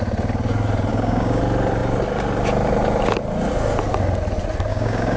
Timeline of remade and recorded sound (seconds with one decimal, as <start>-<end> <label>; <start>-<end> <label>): 0.0-0.9 recorded; 0.9-1.4 remade; 1.4-4.7 recorded; 4.7-5.2 remade